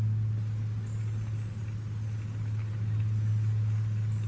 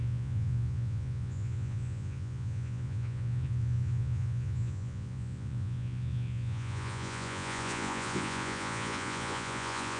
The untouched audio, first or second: first